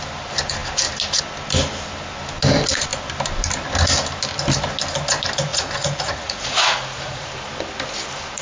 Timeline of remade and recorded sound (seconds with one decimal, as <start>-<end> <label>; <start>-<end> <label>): 0.0-5.5 recorded; 5.5-7.3 remade; 7.3-8.4 recorded